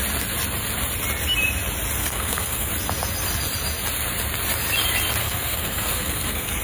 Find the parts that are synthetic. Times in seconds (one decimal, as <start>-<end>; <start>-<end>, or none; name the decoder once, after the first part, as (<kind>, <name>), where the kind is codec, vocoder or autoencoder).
2.0-2.7 (codec, SNAC); 5.2-6.6

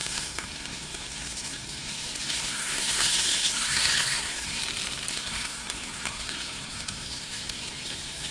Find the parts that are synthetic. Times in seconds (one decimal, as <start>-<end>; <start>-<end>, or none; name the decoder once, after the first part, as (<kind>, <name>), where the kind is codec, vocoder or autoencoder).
0.0-4.6 (codec, SNAC); 5.1-8.3

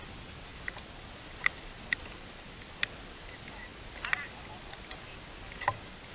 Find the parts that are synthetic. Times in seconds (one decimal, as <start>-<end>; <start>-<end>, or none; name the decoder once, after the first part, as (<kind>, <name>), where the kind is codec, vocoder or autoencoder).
none

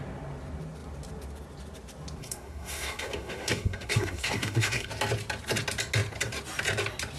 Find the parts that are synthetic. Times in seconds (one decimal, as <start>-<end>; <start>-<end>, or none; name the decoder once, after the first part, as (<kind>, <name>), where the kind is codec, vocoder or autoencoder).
2.2-4.9 (codec, SNAC)